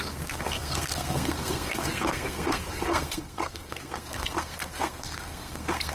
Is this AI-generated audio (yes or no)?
yes